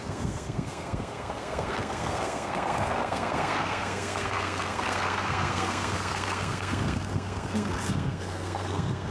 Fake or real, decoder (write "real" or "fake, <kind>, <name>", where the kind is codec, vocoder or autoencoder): fake, codec, SNAC